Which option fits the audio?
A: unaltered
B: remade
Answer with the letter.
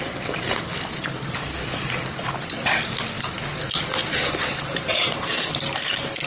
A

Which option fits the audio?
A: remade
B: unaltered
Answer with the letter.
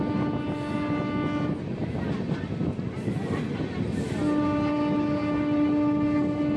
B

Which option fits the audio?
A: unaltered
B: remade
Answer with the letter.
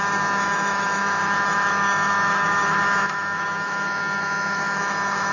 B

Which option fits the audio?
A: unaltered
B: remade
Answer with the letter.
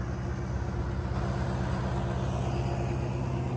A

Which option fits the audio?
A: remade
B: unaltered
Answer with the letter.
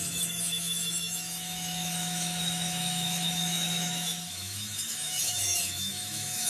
A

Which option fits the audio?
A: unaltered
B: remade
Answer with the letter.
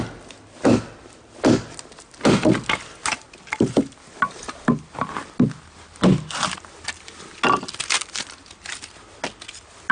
A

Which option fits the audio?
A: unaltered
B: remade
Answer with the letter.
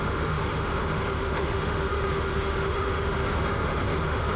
B